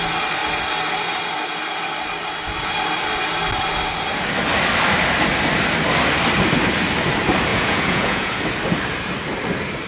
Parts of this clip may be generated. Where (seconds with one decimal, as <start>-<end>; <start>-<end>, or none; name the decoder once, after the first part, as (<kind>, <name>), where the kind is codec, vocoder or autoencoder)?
7.5-8.4 (vocoder, Vocos)